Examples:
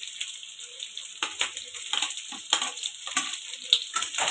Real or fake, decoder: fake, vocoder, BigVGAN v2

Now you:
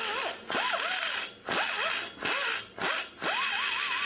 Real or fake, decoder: real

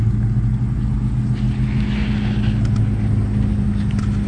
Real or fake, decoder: real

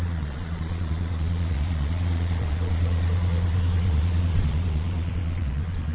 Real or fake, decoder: fake, vocoder, Vocos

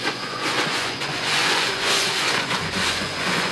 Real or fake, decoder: fake, vocoder, Vocos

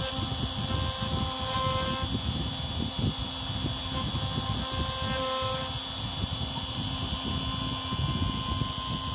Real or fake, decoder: real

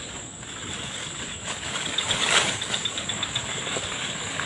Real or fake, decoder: fake, codec, DAC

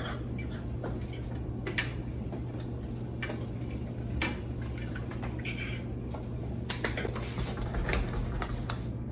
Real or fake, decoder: real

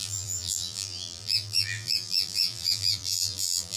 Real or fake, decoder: fake, vocoder, BigVGAN v2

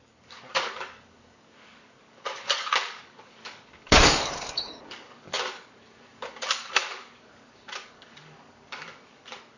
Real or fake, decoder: fake, codec, DAC